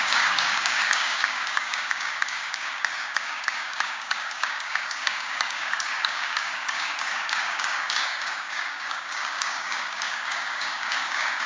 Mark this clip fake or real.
fake